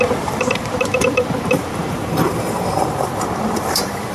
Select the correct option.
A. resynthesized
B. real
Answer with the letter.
A